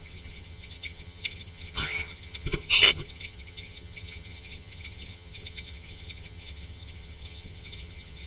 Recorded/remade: remade